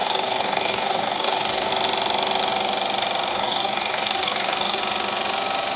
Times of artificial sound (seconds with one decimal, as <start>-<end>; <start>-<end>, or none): 0.0-1.7; 3.3-4.8